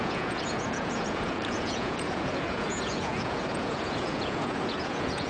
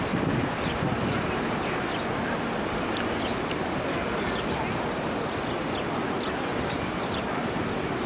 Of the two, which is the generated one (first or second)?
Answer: first